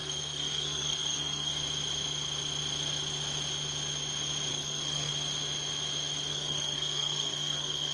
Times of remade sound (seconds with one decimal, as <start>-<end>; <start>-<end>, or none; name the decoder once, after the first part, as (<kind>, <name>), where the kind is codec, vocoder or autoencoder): 0.0-1.5 (codec, SNAC); 4.5-5.1; 6.3-7.9